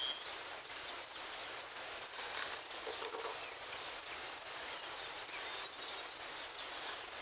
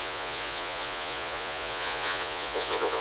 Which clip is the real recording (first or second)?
first